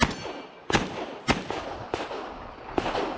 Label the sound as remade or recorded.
recorded